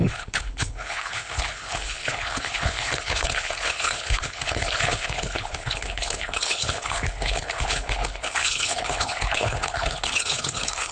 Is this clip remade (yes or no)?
yes